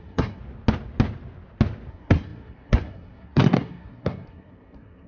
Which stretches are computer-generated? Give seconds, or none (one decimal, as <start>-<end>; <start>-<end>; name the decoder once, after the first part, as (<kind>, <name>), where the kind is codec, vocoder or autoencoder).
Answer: 0.0-0.4 (codec, SNAC); 1.9-5.1